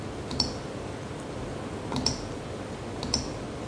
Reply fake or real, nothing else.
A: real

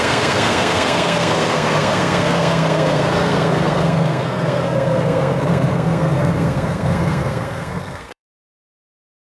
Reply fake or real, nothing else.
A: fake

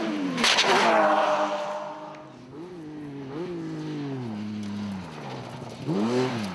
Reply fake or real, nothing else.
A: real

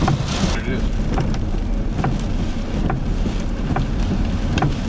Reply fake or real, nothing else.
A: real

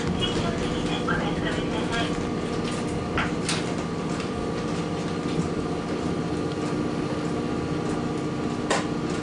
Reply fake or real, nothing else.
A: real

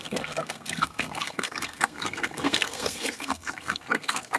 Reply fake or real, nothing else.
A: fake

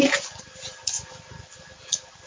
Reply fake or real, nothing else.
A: real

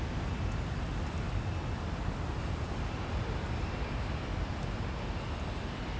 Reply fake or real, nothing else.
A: real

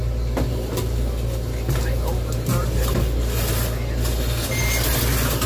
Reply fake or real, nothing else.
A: real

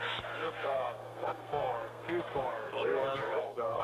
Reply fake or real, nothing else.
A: fake